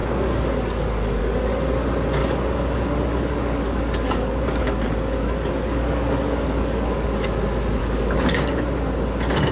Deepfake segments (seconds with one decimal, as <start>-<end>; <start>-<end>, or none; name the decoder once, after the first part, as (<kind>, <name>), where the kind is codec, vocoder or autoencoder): 0.0-1.2 (codec, DAC); 2.2-7.3; 7.8-8.6